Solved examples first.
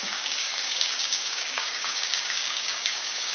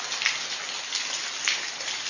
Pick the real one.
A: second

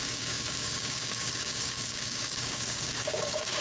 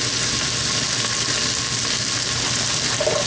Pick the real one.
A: second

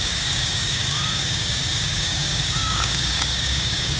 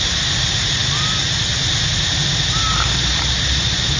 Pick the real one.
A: second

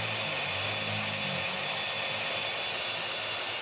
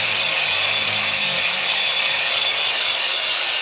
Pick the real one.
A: first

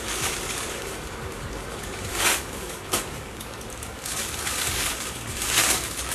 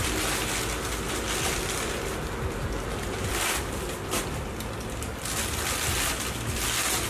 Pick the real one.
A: second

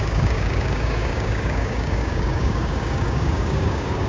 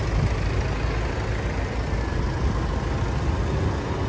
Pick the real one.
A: second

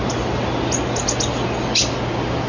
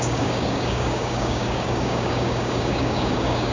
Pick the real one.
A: first